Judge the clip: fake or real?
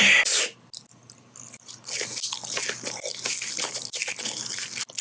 real